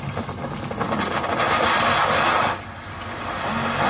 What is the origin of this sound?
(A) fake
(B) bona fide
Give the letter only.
B